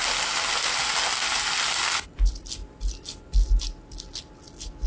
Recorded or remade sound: recorded